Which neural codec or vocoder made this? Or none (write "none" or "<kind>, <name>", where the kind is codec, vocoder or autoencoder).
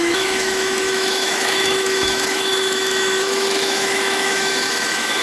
autoencoder, DAC-VAE